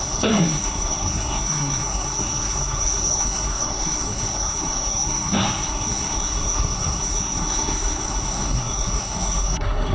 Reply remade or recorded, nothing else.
remade